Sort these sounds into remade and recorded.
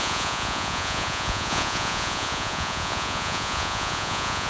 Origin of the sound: remade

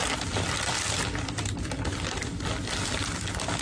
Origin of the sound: recorded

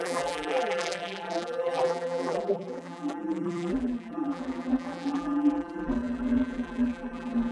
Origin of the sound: remade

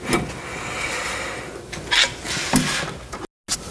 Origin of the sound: recorded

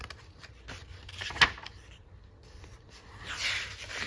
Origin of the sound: recorded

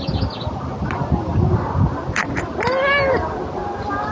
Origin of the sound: recorded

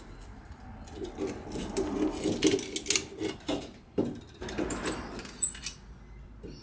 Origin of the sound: recorded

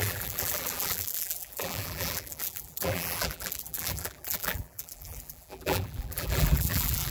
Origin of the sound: remade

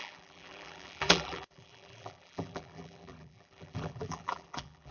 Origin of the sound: remade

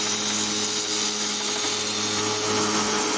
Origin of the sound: recorded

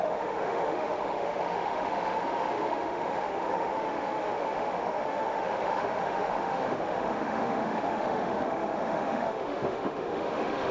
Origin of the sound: remade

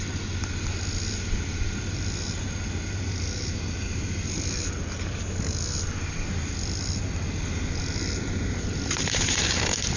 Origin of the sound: recorded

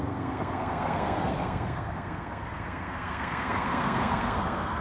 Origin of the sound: remade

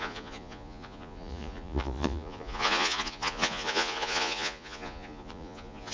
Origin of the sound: remade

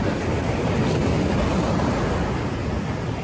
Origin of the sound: recorded